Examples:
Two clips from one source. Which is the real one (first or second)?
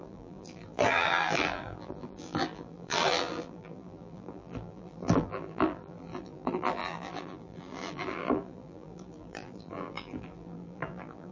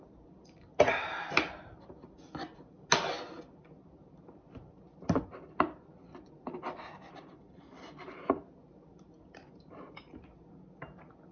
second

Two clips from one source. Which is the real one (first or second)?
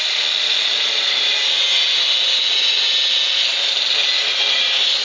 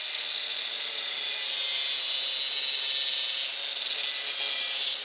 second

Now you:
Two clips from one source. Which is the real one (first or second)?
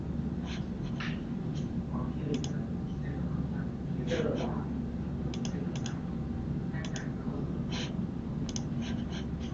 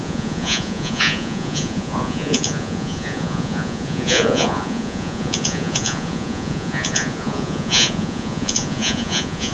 first